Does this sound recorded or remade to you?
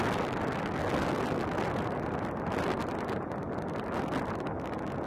recorded